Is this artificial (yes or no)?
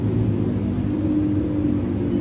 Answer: no